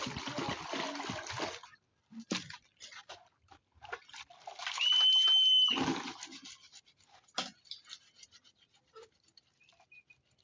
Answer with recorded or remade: recorded